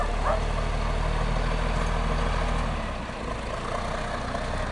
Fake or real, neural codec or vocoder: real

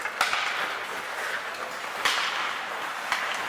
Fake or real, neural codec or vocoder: real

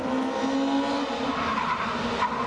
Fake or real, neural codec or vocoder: real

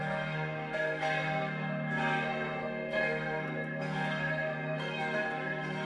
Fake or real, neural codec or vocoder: fake, codec, SNAC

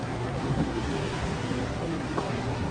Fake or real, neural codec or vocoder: fake, codec, SNAC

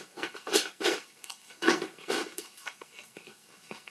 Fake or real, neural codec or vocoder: fake, codec, SNAC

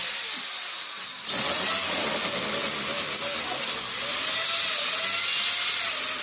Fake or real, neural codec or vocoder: real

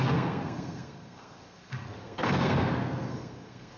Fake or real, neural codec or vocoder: fake, codec, SNAC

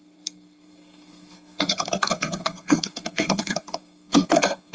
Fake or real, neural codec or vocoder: fake, codec, SNAC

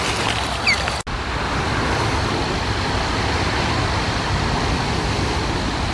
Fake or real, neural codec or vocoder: real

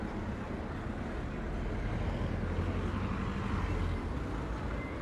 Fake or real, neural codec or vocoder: real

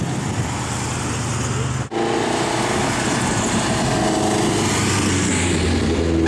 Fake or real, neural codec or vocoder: real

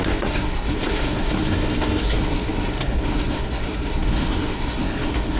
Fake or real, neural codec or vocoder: fake, codec, SNAC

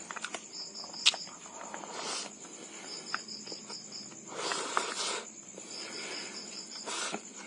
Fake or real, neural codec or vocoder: real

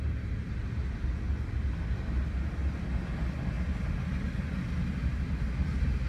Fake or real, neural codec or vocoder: real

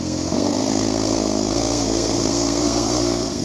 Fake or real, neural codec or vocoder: fake, codec, SNAC